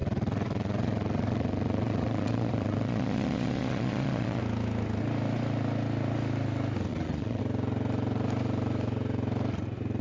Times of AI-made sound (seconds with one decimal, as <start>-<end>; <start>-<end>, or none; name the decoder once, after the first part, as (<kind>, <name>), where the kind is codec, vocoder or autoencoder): 0.0-4.4 (vocoder, Vocos); 6.9-7.4